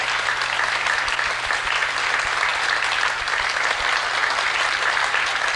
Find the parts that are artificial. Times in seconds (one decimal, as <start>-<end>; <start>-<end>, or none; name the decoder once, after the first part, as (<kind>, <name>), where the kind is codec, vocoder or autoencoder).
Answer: none